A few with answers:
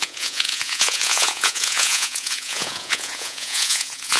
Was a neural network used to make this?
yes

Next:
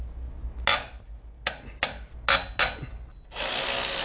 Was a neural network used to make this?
no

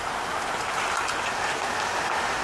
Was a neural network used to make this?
no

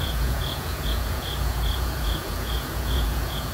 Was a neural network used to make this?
yes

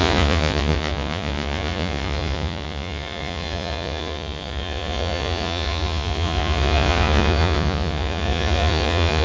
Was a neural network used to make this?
yes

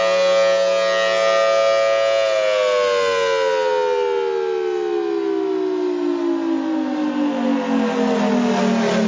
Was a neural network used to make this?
no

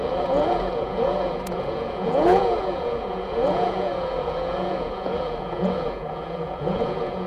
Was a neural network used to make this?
yes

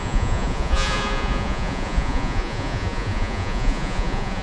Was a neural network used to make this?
yes